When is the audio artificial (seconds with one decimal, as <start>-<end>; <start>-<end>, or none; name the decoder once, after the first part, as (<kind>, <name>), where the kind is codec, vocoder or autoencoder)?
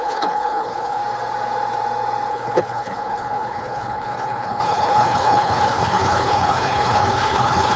0.0-1.0 (codec, HILCodec); 2.3-7.8